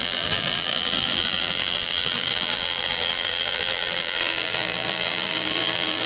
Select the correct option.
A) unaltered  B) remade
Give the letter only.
B